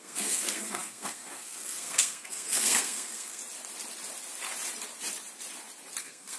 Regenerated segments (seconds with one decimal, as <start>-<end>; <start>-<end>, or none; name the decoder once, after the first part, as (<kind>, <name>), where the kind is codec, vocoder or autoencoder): 0.0-3.4 (codec, SNAC); 6.0-6.4